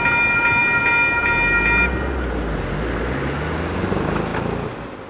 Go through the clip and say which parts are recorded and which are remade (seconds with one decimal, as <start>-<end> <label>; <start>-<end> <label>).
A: 0.0-5.1 recorded